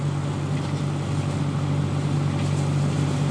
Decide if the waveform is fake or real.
real